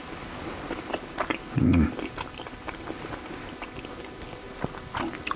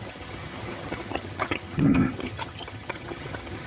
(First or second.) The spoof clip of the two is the second